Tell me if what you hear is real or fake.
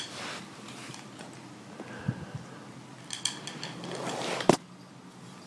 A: real